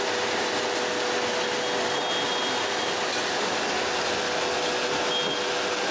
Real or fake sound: real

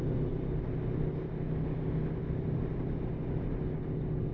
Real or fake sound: real